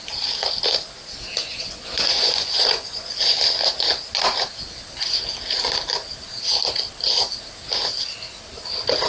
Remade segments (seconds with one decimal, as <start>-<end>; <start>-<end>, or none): 1.3-3.1